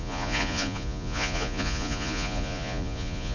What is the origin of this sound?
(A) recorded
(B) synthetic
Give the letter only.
B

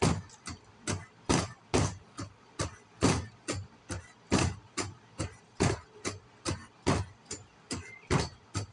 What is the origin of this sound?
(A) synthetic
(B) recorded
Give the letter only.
B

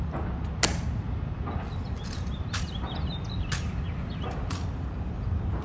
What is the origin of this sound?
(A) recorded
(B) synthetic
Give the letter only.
A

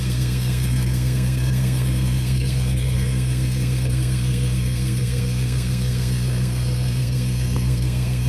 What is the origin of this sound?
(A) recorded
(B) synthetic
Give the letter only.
B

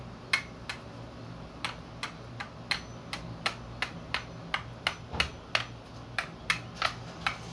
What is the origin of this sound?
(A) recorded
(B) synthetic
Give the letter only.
A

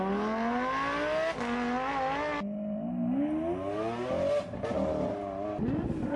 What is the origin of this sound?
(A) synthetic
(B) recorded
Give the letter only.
B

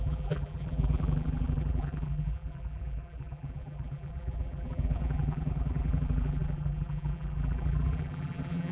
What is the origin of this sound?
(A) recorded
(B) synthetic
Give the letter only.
B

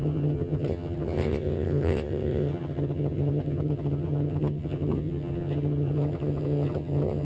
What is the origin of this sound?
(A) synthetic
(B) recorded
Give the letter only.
A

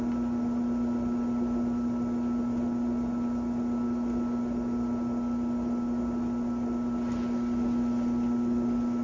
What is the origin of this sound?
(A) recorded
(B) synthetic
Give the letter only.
A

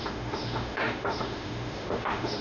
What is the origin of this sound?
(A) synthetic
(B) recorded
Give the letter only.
A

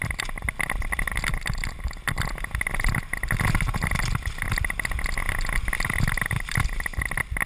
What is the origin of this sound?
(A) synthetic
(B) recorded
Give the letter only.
B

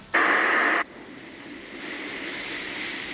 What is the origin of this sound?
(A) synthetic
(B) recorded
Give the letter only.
B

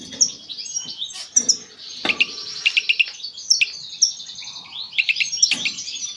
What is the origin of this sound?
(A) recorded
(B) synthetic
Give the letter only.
A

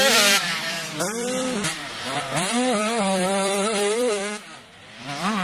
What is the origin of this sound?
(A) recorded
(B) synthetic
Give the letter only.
B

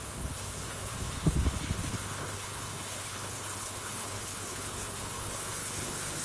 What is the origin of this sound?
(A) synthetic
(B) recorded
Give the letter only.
A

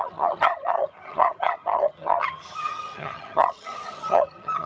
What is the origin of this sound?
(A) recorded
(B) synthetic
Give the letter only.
B